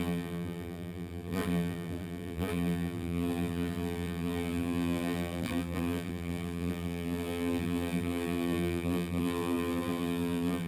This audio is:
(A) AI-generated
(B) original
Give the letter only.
A